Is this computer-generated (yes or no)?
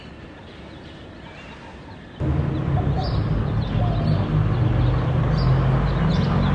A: no